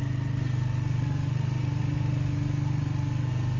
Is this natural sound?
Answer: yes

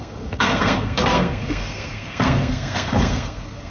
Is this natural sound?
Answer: no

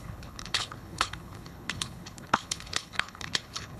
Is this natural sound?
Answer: no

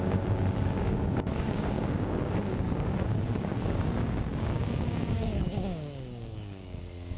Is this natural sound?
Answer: no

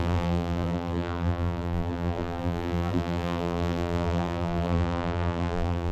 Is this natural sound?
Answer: no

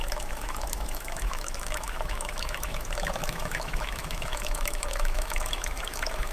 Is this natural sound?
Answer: no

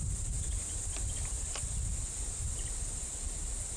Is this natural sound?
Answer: yes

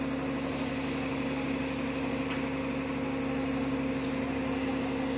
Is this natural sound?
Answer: yes